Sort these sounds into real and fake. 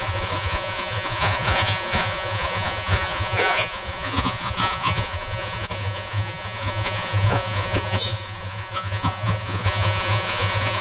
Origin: fake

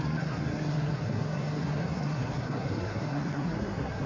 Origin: fake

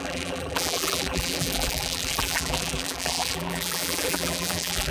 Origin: fake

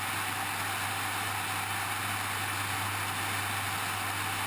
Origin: real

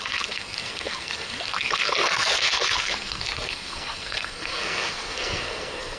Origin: fake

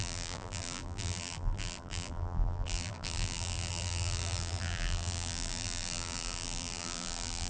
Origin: fake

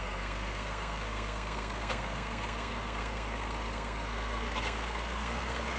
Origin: fake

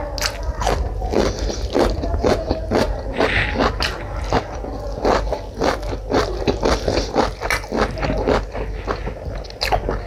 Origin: real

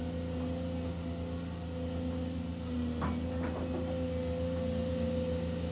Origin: real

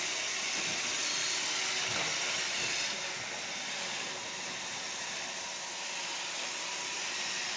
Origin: real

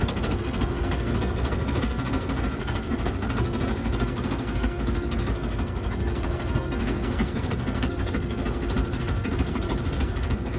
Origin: fake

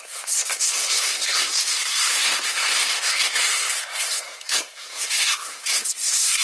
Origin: fake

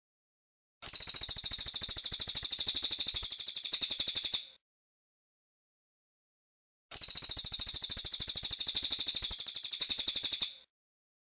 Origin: real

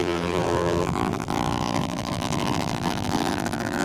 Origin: fake